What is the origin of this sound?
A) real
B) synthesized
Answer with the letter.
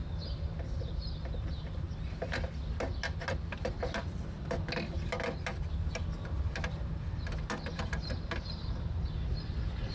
A